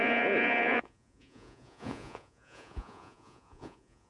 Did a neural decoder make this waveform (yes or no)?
yes